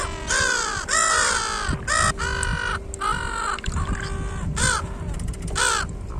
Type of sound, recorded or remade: recorded